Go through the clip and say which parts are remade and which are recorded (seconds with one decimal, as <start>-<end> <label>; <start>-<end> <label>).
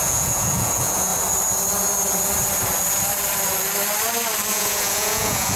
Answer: 0.0-1.1 remade; 1.1-4.5 recorded; 4.5-5.6 remade